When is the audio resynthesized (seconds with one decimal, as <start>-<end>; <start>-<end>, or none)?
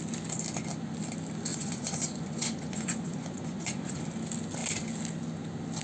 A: 1.5-4.0